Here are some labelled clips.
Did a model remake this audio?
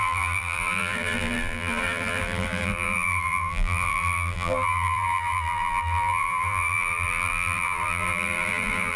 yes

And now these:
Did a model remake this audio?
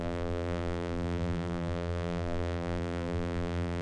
yes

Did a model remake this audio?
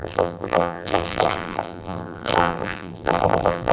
yes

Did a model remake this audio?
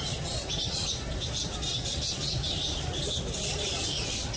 yes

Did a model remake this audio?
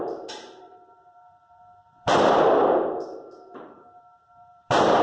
yes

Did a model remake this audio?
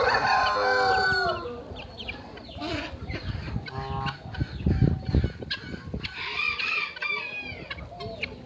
no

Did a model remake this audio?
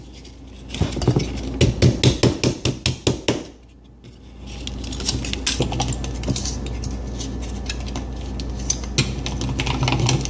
no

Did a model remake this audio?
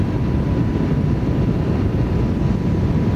no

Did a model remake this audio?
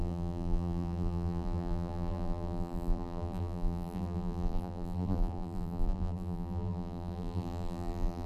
yes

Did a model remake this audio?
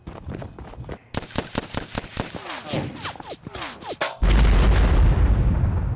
no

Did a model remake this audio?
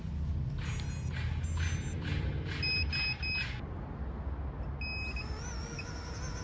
no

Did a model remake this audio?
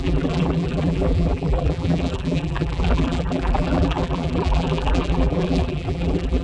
yes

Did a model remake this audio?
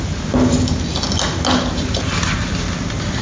no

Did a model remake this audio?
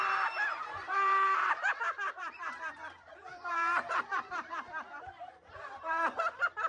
yes